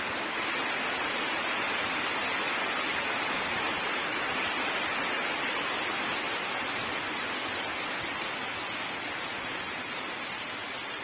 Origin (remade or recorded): recorded